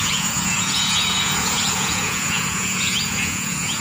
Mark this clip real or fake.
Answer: fake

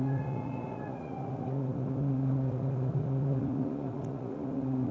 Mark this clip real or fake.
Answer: fake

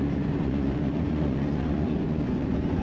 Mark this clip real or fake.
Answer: fake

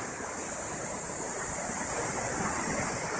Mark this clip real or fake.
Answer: real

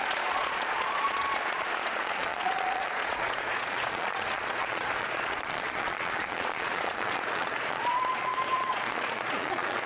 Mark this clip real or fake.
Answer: fake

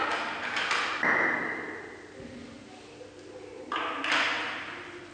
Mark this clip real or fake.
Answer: real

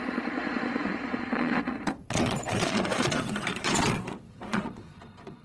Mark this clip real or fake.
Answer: fake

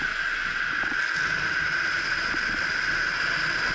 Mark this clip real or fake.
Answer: real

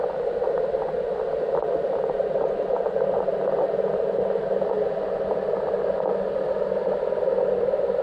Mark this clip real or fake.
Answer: real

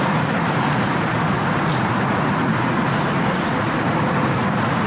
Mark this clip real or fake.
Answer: fake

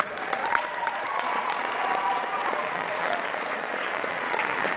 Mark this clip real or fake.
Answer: fake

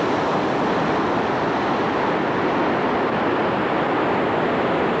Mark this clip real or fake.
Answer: real